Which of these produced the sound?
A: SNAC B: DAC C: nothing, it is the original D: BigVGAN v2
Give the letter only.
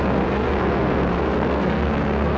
A